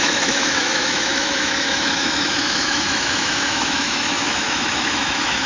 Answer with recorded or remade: remade